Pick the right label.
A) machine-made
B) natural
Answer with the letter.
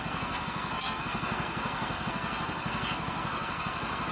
A